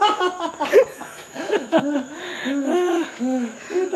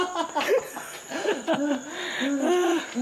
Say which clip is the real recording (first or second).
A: second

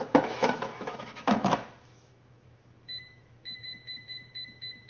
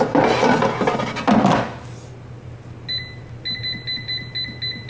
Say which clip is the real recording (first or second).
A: second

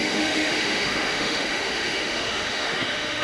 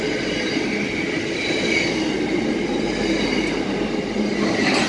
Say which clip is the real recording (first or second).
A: second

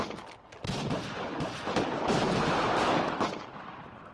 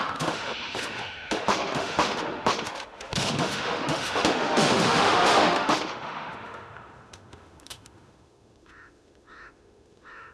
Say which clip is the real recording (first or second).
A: first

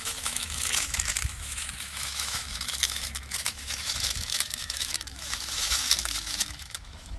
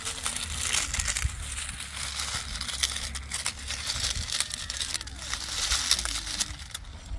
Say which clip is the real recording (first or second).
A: second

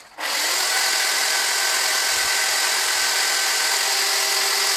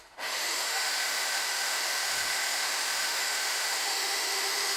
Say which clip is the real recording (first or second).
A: first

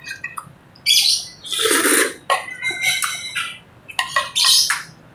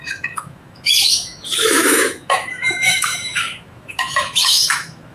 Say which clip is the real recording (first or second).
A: first